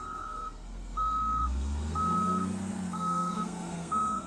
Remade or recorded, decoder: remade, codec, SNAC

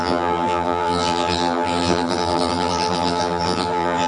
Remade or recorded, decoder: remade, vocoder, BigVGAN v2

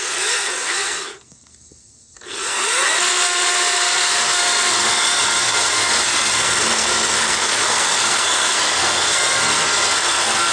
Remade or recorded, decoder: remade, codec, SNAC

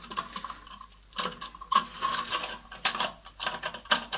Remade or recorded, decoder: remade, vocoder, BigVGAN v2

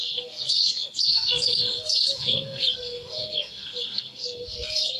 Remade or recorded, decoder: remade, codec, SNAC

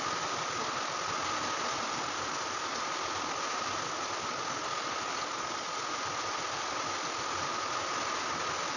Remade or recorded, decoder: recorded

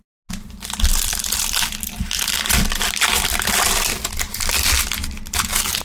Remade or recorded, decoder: recorded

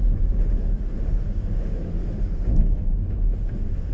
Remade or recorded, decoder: remade, autoencoder, DAC-VAE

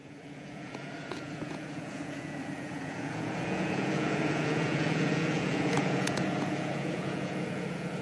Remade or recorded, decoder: remade, vocoder, Vocos